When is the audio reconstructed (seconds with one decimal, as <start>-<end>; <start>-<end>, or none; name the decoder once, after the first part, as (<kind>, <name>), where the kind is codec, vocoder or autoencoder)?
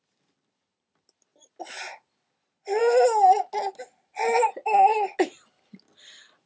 none